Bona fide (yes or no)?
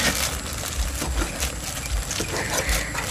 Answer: yes